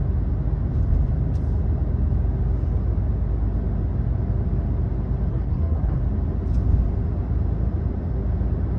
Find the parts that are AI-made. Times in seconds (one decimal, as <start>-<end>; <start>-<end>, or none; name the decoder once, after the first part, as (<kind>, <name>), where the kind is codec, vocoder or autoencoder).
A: 5.3-6.0 (codec, SNAC)